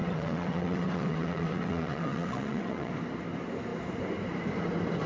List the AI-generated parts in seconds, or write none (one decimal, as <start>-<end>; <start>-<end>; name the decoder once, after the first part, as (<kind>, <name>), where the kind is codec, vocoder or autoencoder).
0.0-2.9 (vocoder, WaveNeXt)